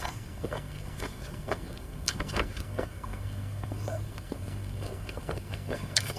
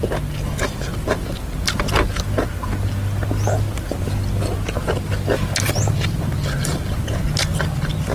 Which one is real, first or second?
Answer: second